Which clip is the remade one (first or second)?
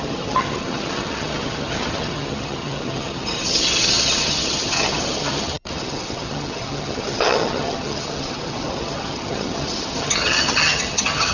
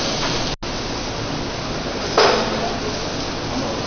first